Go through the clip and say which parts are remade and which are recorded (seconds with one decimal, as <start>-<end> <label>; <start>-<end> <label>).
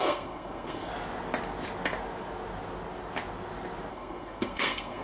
0.0-0.9 remade; 0.9-3.9 recorded; 3.9-5.0 remade